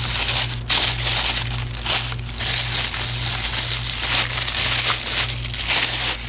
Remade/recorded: recorded